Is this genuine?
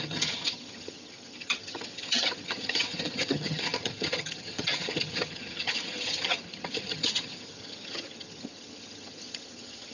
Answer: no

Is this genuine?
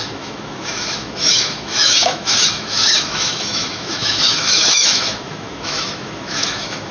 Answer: no